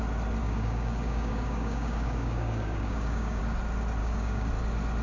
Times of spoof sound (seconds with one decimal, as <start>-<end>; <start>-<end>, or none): 0.4-3.4; 4.0-4.5